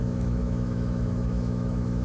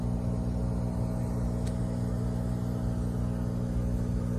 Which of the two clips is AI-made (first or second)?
first